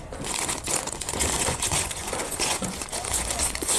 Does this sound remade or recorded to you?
remade